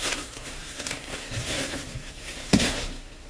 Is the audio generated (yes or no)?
yes